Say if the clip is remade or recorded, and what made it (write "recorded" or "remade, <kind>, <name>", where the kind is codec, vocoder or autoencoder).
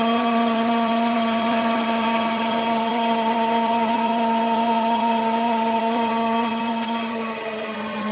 remade, vocoder, HiFi-GAN